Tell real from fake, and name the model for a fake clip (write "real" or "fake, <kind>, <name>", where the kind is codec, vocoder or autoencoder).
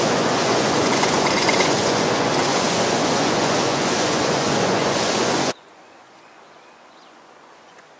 fake, vocoder, Vocos